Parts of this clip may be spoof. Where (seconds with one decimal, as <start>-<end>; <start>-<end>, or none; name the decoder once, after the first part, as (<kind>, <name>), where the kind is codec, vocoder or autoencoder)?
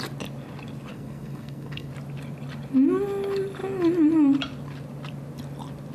0.9-1.9 (codec, SNAC)